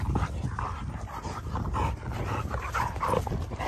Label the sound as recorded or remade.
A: recorded